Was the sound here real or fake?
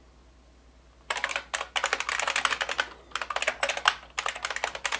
real